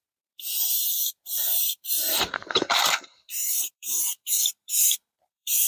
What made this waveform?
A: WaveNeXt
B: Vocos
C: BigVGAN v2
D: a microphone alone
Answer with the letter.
C